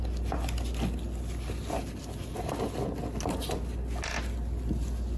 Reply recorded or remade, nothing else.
recorded